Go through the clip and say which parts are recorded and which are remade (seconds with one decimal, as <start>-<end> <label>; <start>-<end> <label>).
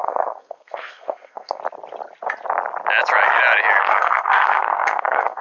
0.0-1.6 remade; 1.6-3.8 recorded; 3.8-5.4 remade